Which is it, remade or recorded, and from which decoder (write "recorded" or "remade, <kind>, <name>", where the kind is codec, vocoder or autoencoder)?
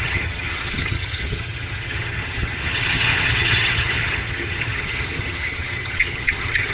remade, vocoder, HiFi-GAN